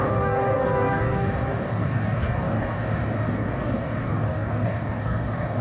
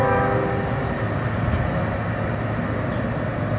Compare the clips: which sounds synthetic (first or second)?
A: first